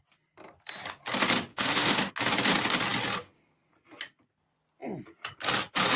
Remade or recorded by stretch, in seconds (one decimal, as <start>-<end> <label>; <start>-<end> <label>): 0.0-1.5 recorded; 1.5-2.1 remade; 2.1-6.0 recorded